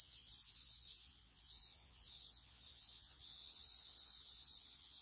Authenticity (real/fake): fake